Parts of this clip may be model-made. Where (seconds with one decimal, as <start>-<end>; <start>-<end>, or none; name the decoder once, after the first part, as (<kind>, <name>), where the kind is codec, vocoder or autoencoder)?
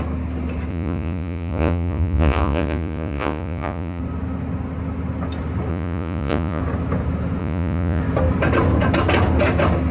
0.7-4.0 (vocoder, Vocos); 5.7-6.6; 7.4-8.0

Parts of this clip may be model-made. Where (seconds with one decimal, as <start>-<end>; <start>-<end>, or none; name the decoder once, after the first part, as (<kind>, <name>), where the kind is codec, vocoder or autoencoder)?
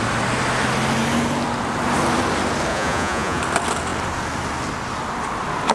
2.7-3.4 (vocoder, Vocos)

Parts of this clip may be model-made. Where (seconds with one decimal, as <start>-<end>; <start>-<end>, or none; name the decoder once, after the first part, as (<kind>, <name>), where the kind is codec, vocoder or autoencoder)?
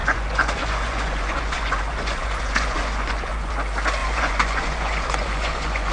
0.0-3.5 (vocoder, Vocos); 4.0-5.9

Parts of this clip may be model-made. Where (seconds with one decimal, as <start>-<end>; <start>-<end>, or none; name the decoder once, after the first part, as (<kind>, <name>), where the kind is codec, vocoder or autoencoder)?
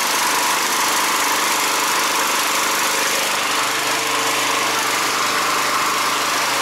none